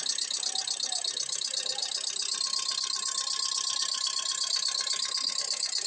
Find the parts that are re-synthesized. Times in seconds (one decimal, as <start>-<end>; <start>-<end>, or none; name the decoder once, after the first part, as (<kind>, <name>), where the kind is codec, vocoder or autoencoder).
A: none